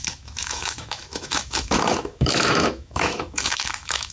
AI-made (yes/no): yes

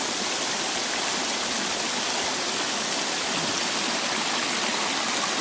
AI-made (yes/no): no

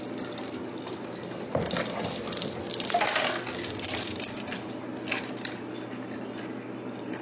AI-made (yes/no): no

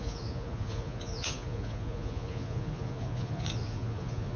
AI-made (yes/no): yes